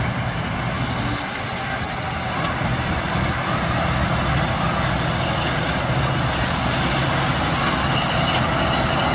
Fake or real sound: real